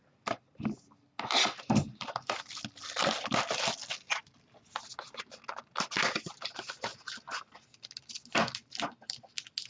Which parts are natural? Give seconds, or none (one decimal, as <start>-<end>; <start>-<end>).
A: 0.0-9.7